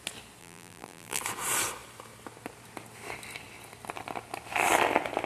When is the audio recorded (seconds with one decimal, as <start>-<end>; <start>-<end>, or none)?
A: 0.0-0.4; 1.2-5.3